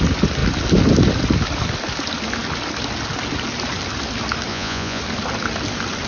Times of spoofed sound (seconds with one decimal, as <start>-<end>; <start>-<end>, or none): 4.5-5.0